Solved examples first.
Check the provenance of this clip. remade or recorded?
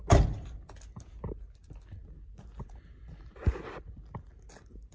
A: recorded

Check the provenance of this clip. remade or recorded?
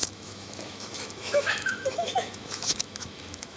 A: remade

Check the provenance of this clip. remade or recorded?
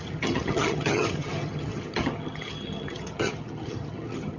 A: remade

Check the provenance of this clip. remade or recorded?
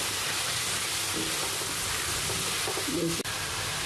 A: recorded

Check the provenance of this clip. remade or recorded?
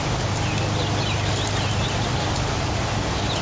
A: recorded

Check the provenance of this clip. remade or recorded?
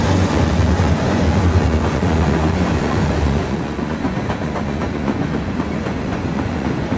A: remade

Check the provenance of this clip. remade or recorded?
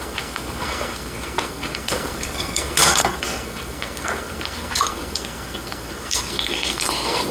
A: remade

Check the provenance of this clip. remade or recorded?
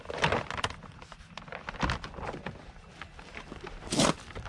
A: recorded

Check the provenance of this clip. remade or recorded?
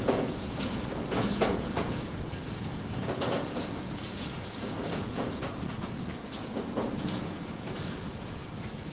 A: remade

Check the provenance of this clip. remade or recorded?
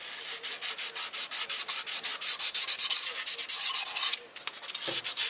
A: recorded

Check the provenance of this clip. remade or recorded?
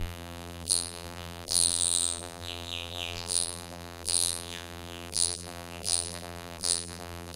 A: remade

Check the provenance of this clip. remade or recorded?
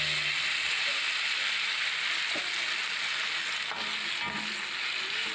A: recorded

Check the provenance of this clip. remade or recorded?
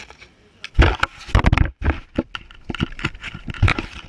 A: recorded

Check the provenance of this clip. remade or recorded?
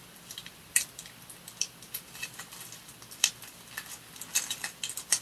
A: recorded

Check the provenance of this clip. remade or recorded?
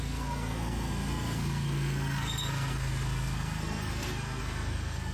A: remade